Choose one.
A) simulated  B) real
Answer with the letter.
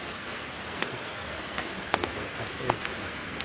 A